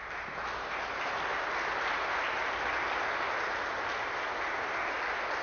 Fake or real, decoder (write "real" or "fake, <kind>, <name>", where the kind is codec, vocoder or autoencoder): real